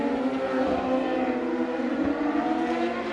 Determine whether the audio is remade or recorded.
remade